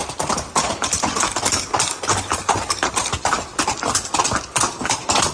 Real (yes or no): yes